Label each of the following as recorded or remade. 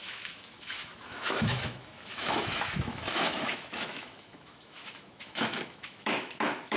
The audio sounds remade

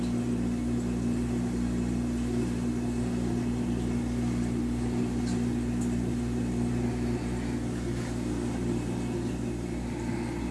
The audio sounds recorded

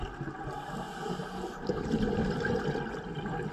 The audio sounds recorded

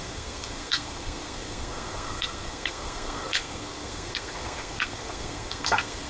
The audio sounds remade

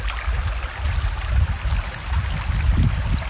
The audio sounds recorded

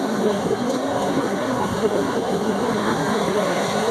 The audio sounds remade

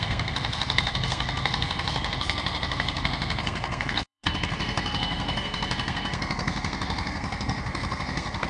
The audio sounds remade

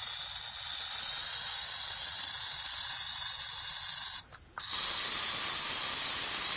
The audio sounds recorded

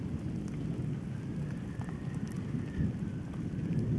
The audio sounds recorded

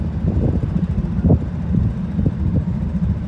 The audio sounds recorded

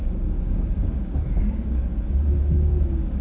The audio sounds remade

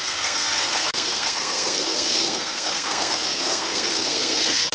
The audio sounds remade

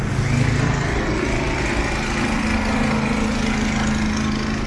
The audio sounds recorded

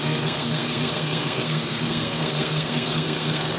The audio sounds remade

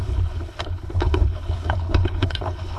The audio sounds remade